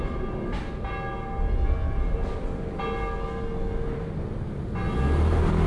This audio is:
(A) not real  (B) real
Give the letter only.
B